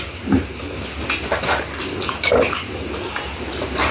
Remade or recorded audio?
recorded